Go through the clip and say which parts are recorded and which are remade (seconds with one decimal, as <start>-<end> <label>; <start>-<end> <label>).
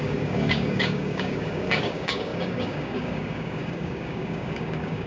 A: 0.0-5.1 remade